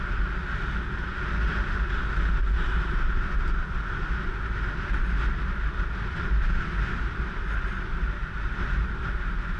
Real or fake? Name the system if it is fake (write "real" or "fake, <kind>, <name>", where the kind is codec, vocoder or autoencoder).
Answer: real